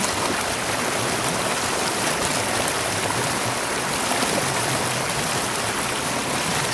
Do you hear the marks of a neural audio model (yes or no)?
no